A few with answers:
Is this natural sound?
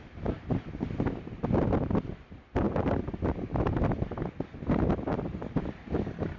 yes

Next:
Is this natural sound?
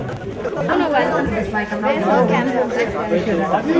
yes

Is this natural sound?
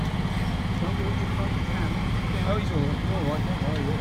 yes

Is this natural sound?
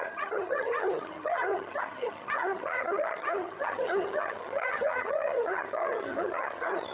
no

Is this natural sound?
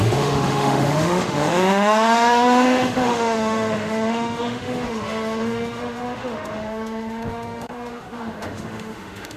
no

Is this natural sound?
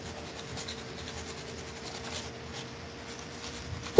yes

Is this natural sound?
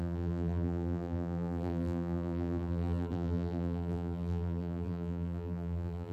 no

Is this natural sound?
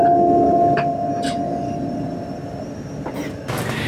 yes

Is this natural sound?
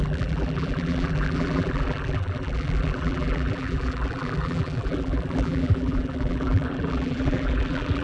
no